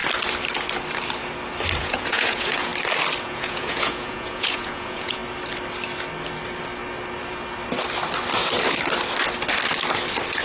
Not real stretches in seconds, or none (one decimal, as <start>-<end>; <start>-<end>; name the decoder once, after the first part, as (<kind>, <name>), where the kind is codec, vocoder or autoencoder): 1.8-2.7 (vocoder, Vocos); 3.2-5.2